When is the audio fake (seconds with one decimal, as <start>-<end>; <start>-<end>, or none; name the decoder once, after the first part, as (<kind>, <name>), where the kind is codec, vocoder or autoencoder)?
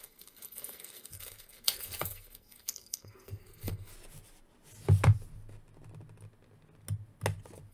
0.0-3.9 (codec, SNAC)